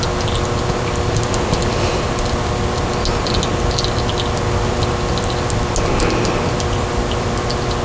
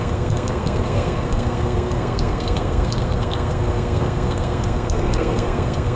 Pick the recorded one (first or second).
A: first